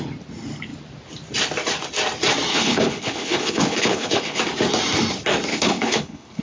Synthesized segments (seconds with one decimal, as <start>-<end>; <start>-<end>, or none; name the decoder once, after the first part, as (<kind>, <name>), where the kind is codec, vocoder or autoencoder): 2.5-4.4 (codec, HILCodec); 5.5-6.4